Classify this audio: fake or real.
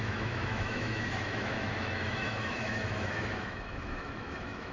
fake